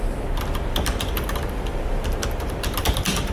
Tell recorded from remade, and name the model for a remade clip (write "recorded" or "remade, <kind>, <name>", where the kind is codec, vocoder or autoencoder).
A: remade, vocoder, BigVGAN v2